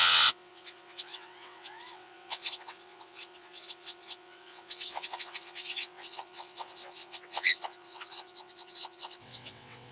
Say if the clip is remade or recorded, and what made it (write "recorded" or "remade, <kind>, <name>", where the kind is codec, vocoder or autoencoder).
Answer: remade, vocoder, WaveNeXt